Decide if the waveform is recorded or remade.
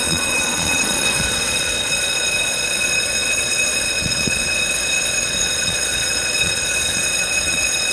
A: remade